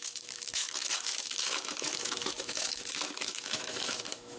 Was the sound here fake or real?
fake